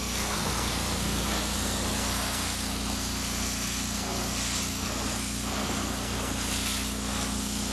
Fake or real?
fake